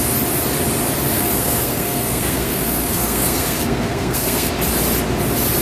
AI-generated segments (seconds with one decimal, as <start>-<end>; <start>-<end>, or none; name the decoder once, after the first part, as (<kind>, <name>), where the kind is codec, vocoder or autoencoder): 1.1-4.5 (codec, SNAC)